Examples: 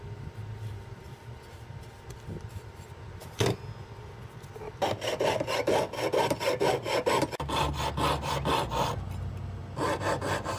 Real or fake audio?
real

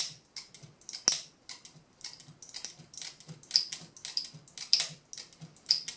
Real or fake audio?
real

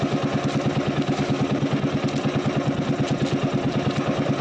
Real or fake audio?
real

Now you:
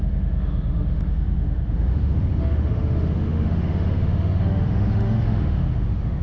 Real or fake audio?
fake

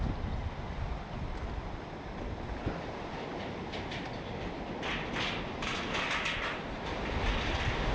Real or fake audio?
real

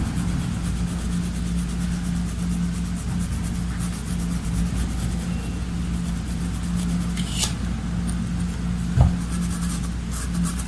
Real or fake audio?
real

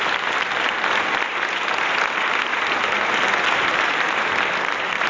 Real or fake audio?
real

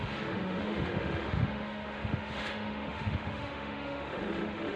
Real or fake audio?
fake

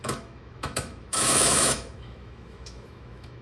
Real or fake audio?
fake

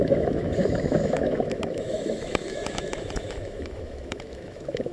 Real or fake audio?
fake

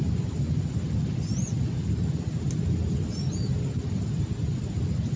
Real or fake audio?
real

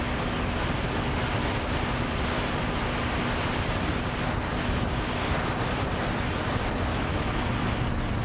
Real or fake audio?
real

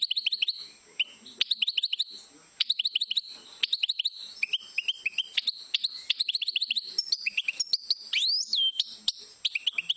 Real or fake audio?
real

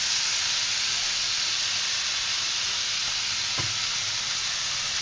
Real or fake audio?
real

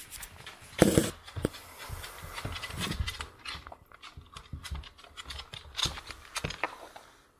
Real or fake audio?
real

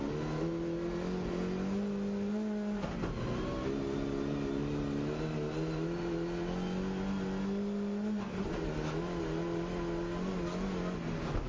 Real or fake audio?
real